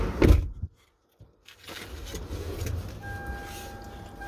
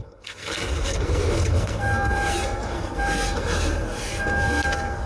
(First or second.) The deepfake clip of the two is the second